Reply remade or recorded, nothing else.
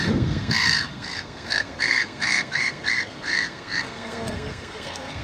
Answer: remade